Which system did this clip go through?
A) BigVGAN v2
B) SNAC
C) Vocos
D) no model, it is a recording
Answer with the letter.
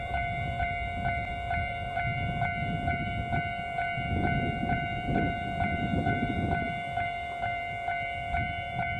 A